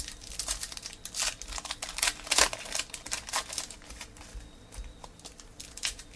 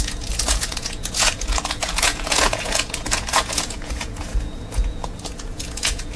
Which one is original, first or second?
first